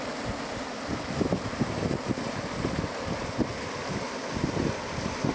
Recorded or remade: recorded